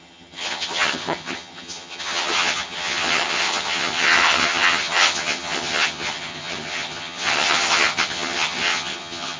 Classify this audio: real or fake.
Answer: fake